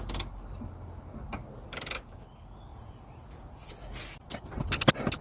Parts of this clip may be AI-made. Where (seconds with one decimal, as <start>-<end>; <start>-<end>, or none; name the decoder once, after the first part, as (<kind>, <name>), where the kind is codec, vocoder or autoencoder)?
2.7-3.7 (vocoder, Vocos)